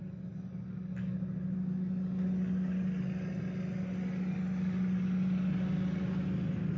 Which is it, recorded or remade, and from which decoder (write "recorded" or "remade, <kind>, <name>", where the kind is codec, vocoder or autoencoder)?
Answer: recorded